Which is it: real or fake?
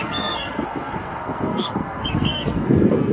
fake